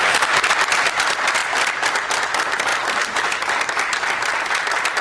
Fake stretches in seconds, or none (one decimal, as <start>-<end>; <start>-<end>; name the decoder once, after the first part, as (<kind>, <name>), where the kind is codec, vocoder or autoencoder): none